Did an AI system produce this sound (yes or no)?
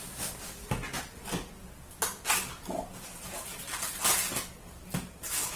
no